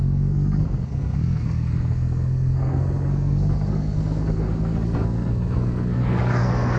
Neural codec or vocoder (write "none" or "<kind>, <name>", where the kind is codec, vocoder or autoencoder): codec, SNAC